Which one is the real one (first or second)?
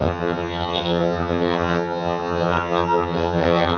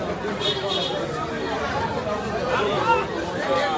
second